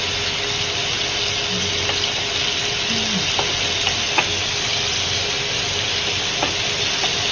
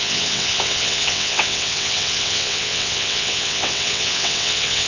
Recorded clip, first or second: first